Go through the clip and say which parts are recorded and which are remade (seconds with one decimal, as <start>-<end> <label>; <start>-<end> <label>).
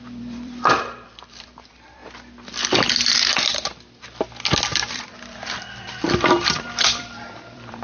0.0-2.0 remade; 2.0-4.9 recorded; 4.9-7.8 remade